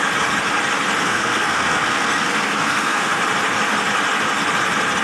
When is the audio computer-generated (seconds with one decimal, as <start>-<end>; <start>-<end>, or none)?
1.0-3.2